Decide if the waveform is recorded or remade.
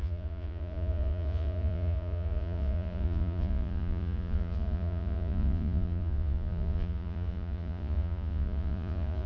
remade